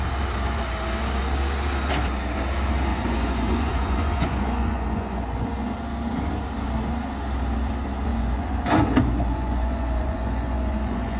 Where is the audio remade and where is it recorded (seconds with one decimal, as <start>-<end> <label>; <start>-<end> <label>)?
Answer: 0.0-2.9 recorded; 2.9-5.5 remade; 5.5-8.1 recorded; 8.1-11.2 remade